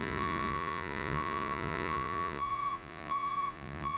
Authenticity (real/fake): fake